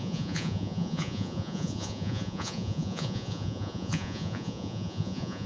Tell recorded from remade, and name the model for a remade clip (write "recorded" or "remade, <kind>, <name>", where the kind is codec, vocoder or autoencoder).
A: remade, vocoder, Vocos